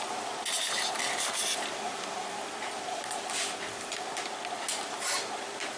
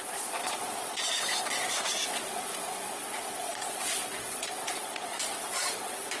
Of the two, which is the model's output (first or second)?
second